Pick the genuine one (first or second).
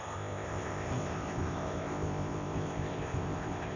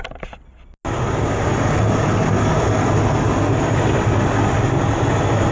second